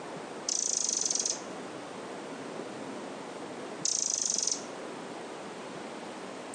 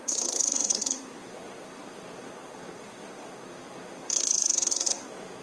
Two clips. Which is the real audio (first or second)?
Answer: first